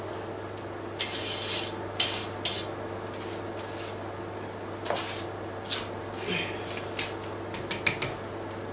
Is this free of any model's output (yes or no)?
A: yes